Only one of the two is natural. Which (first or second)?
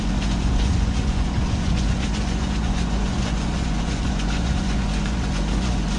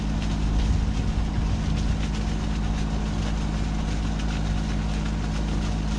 second